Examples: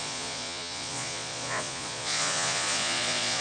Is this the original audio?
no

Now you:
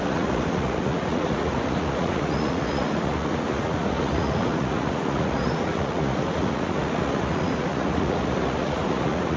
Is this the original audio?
no